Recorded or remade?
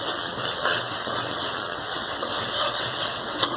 remade